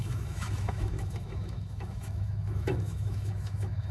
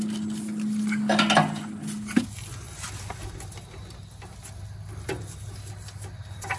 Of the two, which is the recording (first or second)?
second